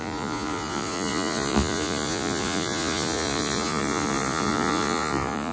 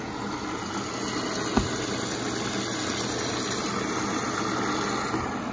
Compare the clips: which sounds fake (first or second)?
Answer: first